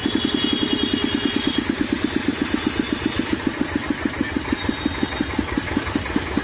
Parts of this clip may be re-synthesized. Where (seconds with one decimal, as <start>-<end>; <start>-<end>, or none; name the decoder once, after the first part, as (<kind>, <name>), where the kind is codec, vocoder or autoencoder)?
none